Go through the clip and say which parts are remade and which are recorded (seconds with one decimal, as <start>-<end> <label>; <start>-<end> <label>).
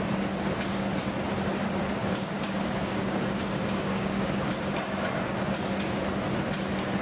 0.0-2.0 recorded; 2.0-4.5 remade; 4.5-7.0 recorded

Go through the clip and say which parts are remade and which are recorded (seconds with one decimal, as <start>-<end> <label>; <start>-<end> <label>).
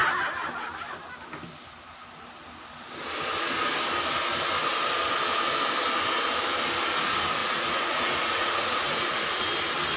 0.0-7.4 recorded; 7.4-9.5 remade; 9.5-10.0 recorded